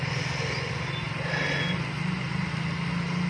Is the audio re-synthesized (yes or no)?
no